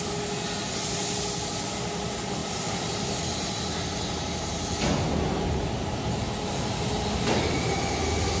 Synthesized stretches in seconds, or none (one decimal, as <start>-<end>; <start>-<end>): none